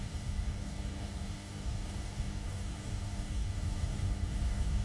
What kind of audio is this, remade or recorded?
remade